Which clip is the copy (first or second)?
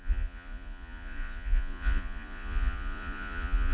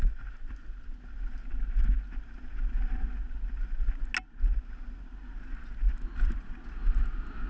first